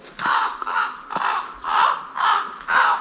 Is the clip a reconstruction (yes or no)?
no